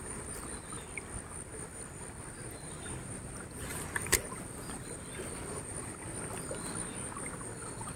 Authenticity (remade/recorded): recorded